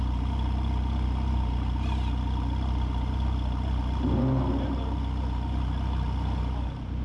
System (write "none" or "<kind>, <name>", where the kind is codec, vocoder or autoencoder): none